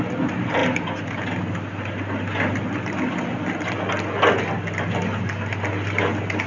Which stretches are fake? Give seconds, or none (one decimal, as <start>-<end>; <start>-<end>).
none